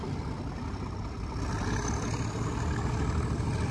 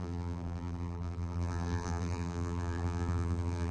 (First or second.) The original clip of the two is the first